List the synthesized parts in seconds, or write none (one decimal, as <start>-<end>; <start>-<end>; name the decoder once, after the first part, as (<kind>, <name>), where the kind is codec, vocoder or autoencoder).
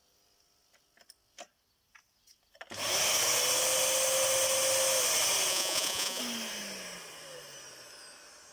5.5-6.2 (vocoder, Vocos)